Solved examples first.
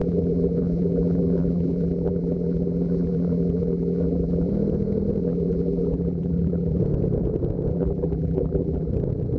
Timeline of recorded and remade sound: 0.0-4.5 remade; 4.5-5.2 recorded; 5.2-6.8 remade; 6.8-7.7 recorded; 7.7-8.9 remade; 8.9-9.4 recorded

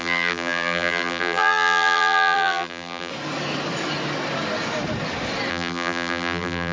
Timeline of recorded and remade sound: 0.0-3.1 remade; 3.1-5.5 recorded; 5.5-6.7 remade

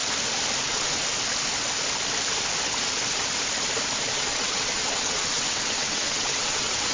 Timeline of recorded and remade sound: 0.0-0.6 recorded; 0.6-1.0 remade; 1.0-4.0 recorded; 4.0-6.9 remade

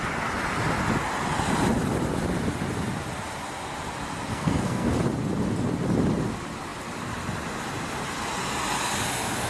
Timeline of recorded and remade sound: 0.0-4.3 recorded; 4.3-4.9 remade; 4.9-9.5 recorded

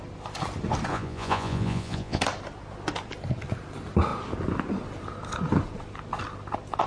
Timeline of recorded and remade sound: 0.0-0.9 recorded; 0.9-2.2 remade; 2.2-6.9 recorded

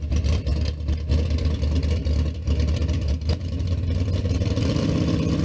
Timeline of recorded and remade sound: 0.0-0.5 remade; 0.5-1.1 recorded; 1.1-5.4 remade

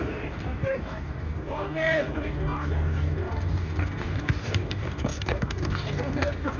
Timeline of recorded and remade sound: 0.0-6.6 remade